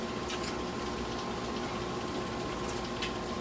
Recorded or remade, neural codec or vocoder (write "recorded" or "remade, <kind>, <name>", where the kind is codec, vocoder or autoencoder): recorded